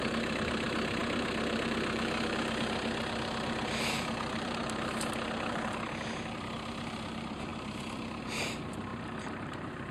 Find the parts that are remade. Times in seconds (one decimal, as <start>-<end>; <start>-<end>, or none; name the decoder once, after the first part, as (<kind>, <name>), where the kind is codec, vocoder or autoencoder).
0.0-9.9 (vocoder, BigVGAN v2)